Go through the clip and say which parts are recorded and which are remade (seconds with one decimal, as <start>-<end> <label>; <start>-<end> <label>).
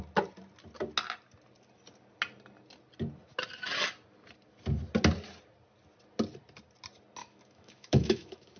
0.0-7.2 recorded; 7.2-8.6 remade